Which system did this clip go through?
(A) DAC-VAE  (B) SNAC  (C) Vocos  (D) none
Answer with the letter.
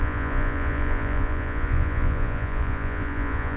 C